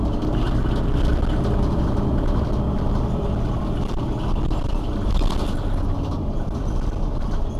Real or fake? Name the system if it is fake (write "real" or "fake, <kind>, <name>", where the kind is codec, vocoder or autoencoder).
real